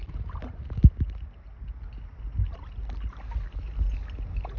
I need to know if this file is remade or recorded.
recorded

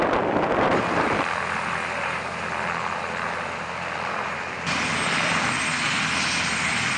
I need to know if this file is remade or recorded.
recorded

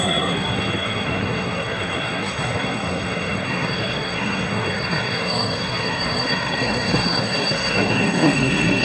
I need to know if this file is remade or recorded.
remade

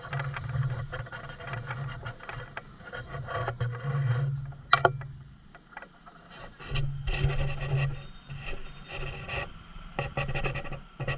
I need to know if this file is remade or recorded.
recorded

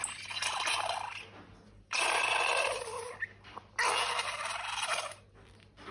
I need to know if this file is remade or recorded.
recorded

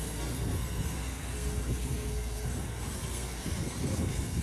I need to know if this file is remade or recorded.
remade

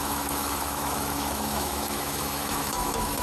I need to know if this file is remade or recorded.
remade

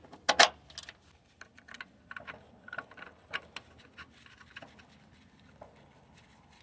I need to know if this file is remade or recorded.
recorded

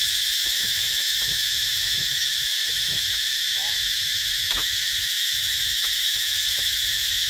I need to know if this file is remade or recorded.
remade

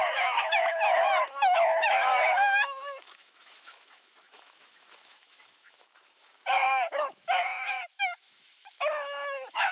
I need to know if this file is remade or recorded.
remade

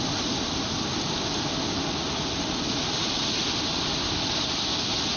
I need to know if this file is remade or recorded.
recorded